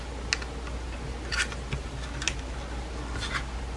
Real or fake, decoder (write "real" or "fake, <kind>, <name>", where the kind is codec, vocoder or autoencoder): real